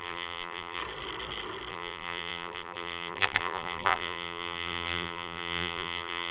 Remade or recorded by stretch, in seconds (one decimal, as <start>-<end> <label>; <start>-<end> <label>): 0.0-0.8 remade; 0.8-1.7 recorded; 1.7-6.3 remade